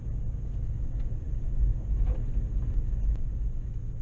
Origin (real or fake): real